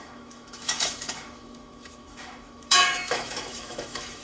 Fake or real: fake